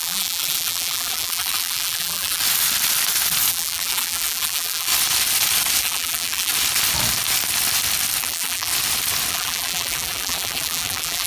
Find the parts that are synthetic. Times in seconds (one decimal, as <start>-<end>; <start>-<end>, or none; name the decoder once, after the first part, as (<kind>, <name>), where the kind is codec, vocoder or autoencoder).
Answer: 0.0-2.4 (vocoder, BigVGAN v2); 3.5-4.9; 5.8-6.5; 8.2-8.7; 9.3-11.3